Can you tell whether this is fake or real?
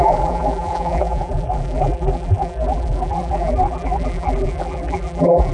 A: fake